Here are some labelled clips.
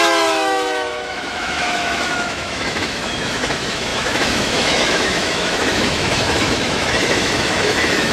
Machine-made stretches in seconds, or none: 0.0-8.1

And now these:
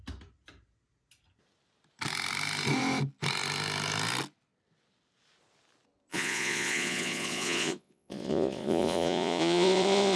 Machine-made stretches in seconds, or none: 6.1-10.2

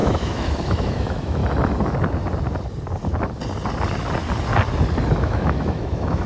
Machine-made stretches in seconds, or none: 0.0-1.4; 5.2-6.3

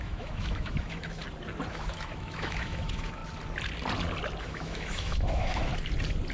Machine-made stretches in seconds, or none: 0.0-1.2; 1.7-3.2; 4.4-5.7